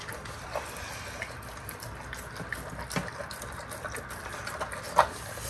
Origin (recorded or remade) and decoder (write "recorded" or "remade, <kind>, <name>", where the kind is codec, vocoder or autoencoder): recorded